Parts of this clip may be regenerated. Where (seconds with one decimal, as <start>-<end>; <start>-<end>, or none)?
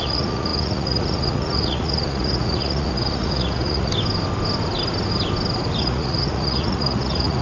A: 0.0-3.9; 5.8-7.4